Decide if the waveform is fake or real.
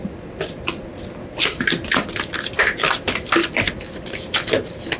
real